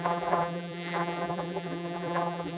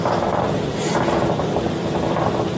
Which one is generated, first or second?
first